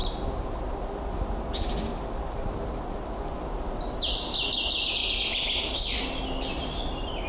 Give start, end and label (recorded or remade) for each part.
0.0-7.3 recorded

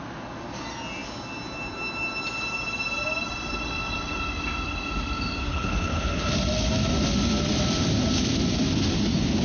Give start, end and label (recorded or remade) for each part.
0.0-5.5 recorded; 5.5-6.3 remade; 6.3-9.4 recorded

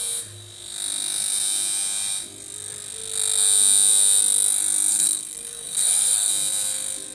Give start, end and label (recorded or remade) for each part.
0.0-4.9 recorded; 4.9-6.3 remade; 6.3-7.1 recorded

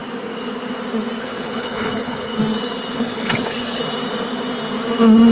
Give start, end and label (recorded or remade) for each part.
0.0-1.2 recorded; 1.2-2.4 remade; 2.4-2.9 recorded; 2.9-3.8 remade; 3.8-5.3 recorded

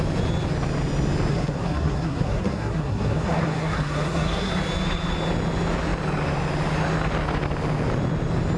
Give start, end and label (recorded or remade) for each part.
0.0-1.3 recorded; 1.3-4.5 remade; 4.5-8.6 recorded

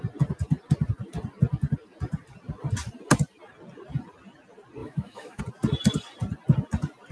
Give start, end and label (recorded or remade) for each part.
0.0-4.8 recorded; 4.8-5.4 remade; 5.4-7.1 recorded

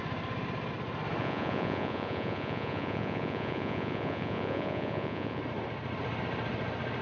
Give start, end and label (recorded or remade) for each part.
0.0-1.2 recorded; 1.2-5.4 remade; 5.4-7.0 recorded

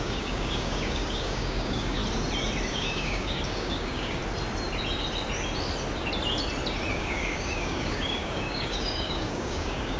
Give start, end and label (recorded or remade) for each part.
0.0-2.0 remade; 2.0-2.7 recorded; 2.7-4.2 remade; 4.2-6.9 recorded; 6.9-10.0 remade